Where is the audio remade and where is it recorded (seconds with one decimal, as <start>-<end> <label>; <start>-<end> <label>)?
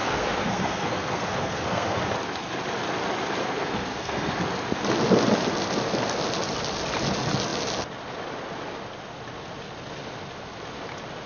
0.0-2.0 remade; 2.0-3.4 recorded; 3.4-4.5 remade; 4.5-11.3 recorded